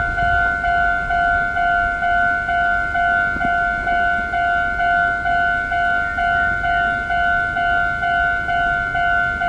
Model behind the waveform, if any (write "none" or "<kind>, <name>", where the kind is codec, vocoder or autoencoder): none